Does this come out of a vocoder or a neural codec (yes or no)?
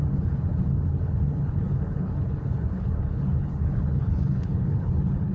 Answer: yes